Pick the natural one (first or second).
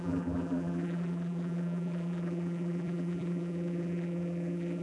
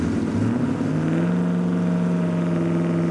second